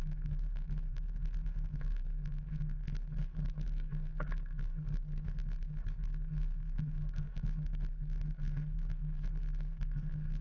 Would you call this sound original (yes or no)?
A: no